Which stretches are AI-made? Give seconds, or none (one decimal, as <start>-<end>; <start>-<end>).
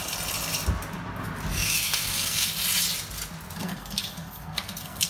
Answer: 1.5-2.5; 3.6-5.1